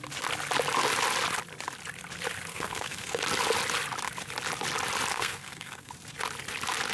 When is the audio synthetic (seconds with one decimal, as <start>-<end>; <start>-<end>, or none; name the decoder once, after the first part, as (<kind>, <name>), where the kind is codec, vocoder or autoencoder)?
2.5-3.2 (codec, SNAC); 5.1-5.9